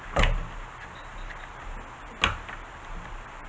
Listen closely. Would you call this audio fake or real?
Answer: real